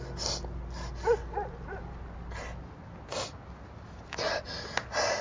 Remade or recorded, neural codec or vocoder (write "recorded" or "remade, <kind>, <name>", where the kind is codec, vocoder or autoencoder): recorded